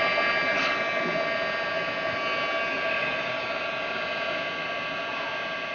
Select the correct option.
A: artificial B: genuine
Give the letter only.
B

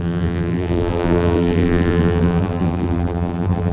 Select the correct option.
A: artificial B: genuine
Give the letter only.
A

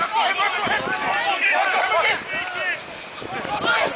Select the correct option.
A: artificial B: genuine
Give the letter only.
B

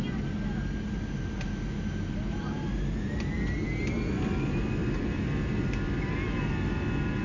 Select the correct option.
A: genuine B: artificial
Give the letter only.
A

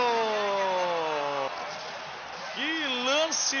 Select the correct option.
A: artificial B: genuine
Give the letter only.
B